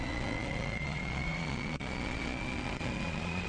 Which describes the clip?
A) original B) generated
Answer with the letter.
B